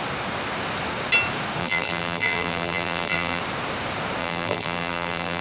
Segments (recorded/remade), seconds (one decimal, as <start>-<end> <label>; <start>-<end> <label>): 0.0-1.6 recorded; 1.6-3.4 remade; 3.4-4.2 recorded; 4.2-5.4 remade